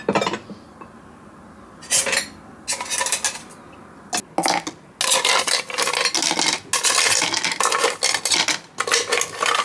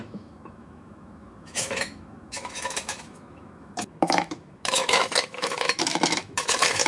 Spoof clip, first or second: second